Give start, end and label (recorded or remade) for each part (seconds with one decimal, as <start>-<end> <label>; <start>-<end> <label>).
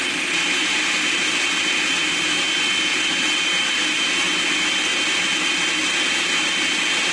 0.0-7.1 recorded